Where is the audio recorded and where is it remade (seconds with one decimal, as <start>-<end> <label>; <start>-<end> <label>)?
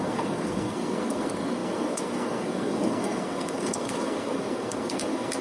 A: 0.0-5.4 remade